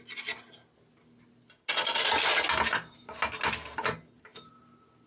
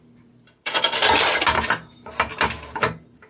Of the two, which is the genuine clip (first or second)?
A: first